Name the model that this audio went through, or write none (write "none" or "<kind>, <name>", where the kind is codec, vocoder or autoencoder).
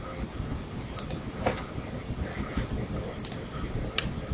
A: none